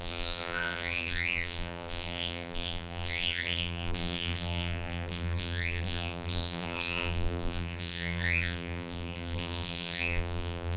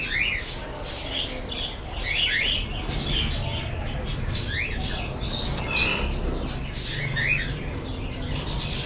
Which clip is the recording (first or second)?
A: second